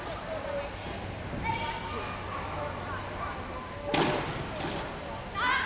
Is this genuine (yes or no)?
yes